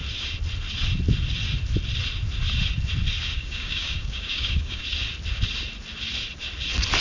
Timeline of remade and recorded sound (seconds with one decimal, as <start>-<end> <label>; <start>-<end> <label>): 0.0-3.3 recorded; 3.3-4.8 remade; 4.8-7.0 recorded

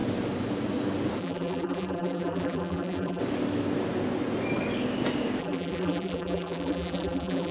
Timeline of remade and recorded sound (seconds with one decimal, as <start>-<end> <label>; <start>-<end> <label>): 0.0-1.2 recorded; 1.2-3.2 remade; 3.2-5.4 recorded; 5.4-7.5 remade

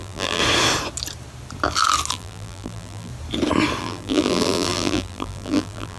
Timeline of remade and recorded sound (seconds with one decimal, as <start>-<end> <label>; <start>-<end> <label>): 0.0-0.4 remade; 0.4-2.1 recorded; 2.1-3.1 remade; 3.1-3.8 recorded; 3.8-6.0 remade